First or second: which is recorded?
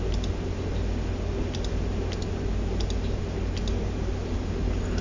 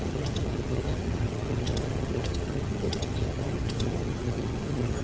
first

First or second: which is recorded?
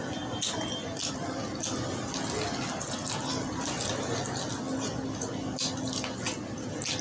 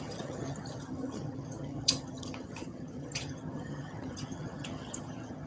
first